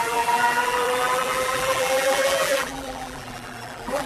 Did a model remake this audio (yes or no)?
yes